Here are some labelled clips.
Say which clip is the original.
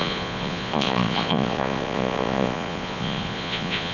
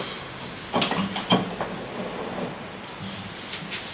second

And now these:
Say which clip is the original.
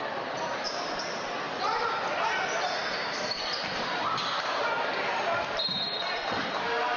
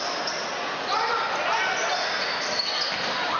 second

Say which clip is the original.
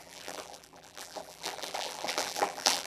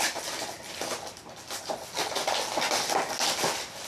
second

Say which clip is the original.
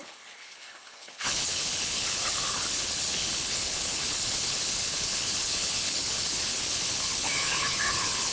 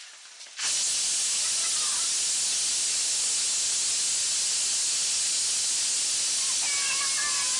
second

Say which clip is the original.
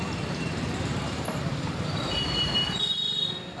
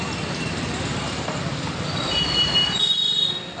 second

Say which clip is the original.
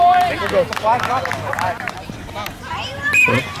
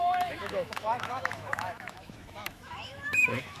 first